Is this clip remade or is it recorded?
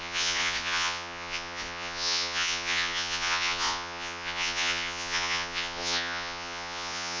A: remade